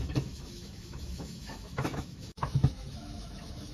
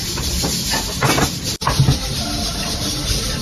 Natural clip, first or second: second